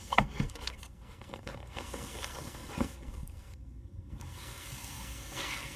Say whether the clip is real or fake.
fake